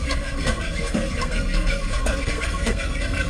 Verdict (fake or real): fake